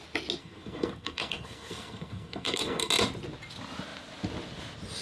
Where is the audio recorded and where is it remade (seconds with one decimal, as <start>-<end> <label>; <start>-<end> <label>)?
0.0-0.4 recorded; 0.4-2.9 remade; 2.9-5.0 recorded